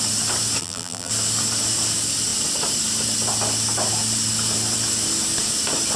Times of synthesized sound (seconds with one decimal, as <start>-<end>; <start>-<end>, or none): 0.6-1.1